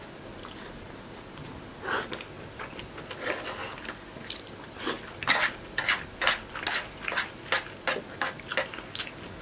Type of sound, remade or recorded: recorded